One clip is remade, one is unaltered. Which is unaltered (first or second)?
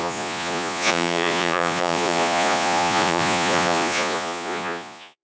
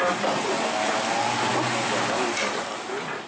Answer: second